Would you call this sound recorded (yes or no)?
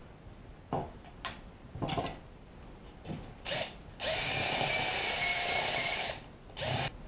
no